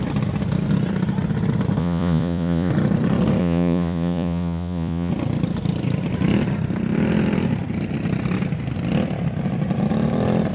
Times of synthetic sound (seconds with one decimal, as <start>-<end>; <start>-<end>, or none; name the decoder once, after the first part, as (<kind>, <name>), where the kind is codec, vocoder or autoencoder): 1.8-2.7 (vocoder, Vocos); 3.4-5.1